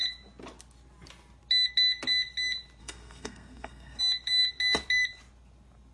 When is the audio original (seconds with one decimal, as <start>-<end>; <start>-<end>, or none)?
0.0-2.8; 4.0-5.9